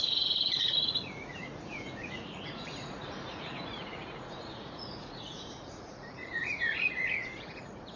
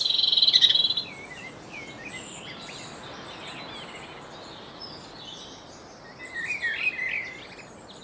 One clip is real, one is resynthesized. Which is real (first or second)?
second